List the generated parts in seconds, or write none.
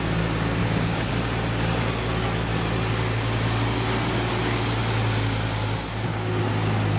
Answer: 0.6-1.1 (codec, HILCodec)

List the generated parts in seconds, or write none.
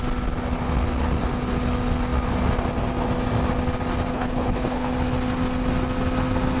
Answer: 4.1-4.9 (codec, HILCodec)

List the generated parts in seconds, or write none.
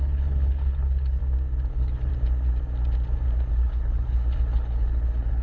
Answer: 0.0-1.2 (codec, HILCodec); 1.7-2.1; 3.5-5.4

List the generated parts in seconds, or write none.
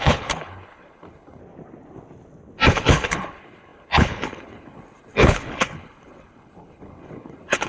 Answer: 0.0-1.4 (codec, HILCodec); 2.7-7.7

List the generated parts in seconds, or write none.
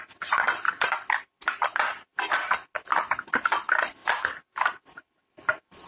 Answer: none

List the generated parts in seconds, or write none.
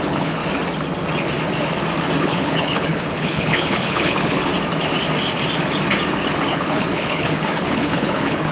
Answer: 0.0-0.4 (codec, HILCodec); 2.2-4.5; 6.5-8.5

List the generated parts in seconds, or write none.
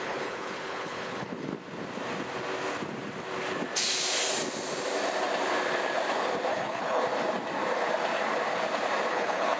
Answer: 0.0-1.5 (codec, HILCodec); 6.5-7.0; 9.1-9.6